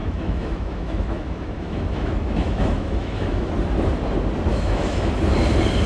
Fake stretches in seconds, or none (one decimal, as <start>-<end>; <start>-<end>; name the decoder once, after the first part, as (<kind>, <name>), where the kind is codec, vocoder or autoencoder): 0.0-3.5 (autoencoder, DAC-VAE); 4.5-5.1